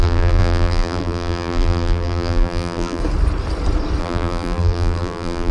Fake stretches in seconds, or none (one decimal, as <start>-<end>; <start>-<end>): 0.0-3.0; 4.0-5.5